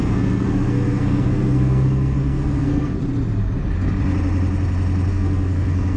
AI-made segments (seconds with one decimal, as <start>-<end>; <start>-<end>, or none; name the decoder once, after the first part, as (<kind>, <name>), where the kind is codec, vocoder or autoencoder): 0.0-3.0 (codec, SNAC); 5.1-6.0